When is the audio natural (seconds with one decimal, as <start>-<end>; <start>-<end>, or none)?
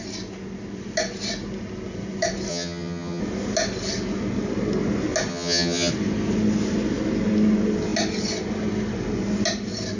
0.0-2.5; 3.2-5.3; 5.9-10.0